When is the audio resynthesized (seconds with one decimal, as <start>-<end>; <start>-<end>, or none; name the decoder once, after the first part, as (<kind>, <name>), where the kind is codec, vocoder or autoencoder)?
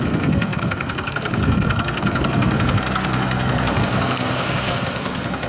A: 0.0-5.5 (codec, SNAC)